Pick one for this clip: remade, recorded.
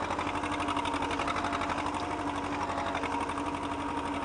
recorded